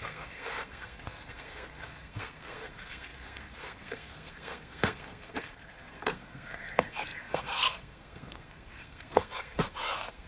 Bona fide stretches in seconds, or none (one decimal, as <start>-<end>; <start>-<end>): none